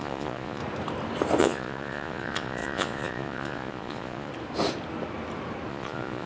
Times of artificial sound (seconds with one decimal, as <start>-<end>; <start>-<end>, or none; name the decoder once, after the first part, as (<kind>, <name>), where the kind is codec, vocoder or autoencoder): 0.0-0.6 (vocoder, Vocos); 1.4-4.3; 5.7-6.3